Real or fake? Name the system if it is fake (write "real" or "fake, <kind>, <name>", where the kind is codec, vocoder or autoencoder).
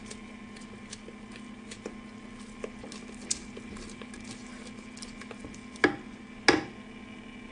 real